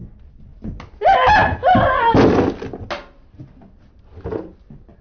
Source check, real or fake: real